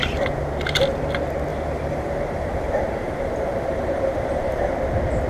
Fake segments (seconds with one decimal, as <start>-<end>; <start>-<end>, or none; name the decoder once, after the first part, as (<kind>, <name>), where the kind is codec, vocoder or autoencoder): 1.5-4.7 (vocoder, BigVGAN v2)